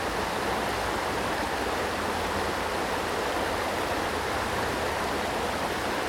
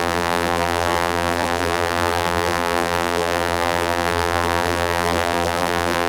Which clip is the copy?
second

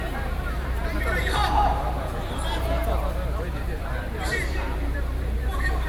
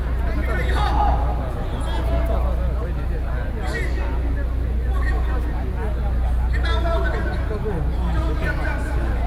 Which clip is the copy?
first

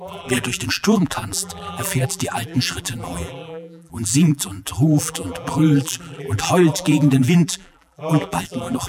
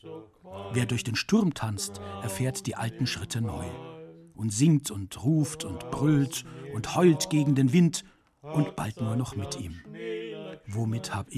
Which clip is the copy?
first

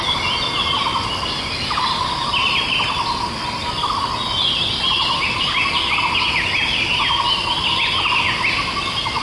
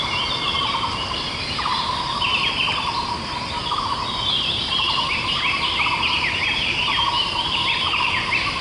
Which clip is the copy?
second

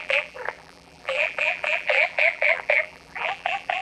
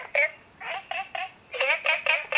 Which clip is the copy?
first